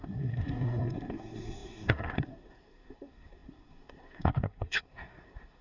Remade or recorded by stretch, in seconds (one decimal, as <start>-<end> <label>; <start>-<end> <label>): 0.0-5.6 remade